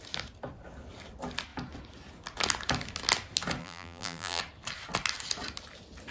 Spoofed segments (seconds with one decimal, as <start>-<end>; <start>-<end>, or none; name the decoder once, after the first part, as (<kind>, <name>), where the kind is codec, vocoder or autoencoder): 3.6-4.4 (vocoder, BigVGAN v2)